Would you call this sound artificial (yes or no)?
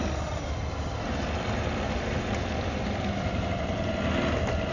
no